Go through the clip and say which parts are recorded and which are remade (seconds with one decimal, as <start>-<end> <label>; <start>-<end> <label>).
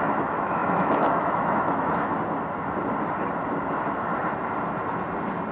0.0-2.1 remade; 2.1-5.5 recorded